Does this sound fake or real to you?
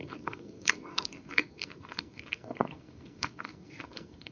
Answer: fake